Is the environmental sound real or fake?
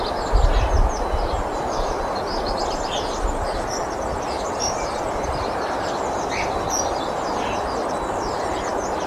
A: real